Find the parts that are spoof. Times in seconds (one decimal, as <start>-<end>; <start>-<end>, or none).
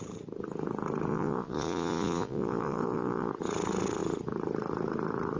1.1-3.3